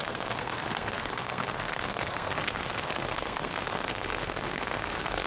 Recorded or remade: remade